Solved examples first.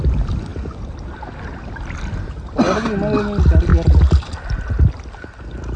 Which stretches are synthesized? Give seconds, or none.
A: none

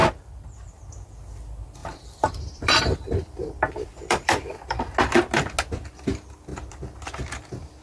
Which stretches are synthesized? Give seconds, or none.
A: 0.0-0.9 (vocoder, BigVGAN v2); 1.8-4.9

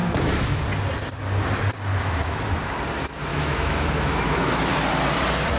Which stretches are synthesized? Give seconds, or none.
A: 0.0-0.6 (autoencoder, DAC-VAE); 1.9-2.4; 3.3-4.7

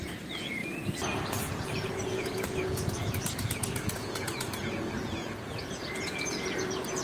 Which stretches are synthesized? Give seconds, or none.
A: 0.0-0.6 (vocoder, Vocos); 1.4-7.0